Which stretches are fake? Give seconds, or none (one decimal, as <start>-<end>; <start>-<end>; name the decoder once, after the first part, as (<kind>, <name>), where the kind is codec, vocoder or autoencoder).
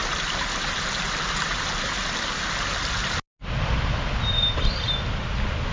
none